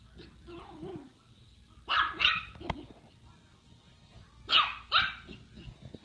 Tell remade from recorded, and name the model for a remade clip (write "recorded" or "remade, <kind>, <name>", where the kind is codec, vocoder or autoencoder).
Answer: recorded